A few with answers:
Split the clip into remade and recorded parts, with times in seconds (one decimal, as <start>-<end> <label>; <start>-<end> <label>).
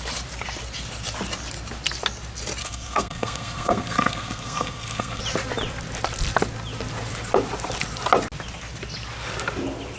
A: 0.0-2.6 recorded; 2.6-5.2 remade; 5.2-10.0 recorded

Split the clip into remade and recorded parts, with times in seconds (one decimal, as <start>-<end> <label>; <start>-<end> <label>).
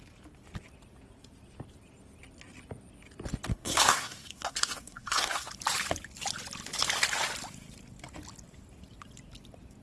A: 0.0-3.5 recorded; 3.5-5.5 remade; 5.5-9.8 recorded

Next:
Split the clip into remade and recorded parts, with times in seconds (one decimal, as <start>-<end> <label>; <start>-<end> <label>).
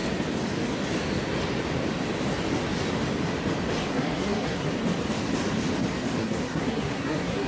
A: 0.0-3.9 recorded; 3.9-4.7 remade; 4.7-6.2 recorded; 6.2-7.5 remade